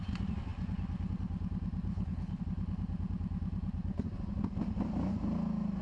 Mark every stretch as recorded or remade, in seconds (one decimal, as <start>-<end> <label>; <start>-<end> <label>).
0.0-1.9 recorded; 1.9-2.4 remade; 2.4-5.8 recorded